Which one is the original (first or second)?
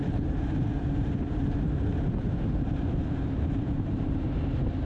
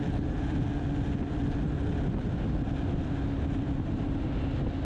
second